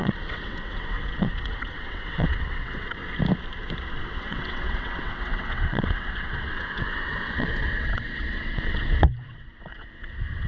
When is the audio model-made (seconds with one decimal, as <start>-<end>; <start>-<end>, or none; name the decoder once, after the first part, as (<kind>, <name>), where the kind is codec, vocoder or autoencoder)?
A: 0.0-3.0 (vocoder, WaveNeXt); 4.0-10.5